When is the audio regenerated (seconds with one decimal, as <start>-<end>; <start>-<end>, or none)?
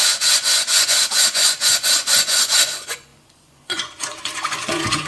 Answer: 0.0-5.1